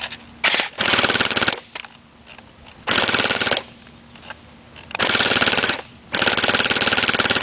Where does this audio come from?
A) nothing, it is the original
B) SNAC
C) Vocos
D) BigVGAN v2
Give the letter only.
A